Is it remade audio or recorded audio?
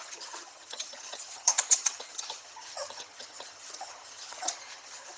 remade